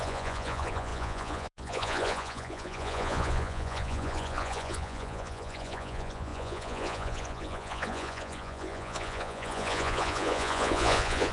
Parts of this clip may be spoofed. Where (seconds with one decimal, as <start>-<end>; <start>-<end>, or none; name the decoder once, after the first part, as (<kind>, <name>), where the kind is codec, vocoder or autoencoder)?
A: 0.0-11.3 (vocoder, Vocos)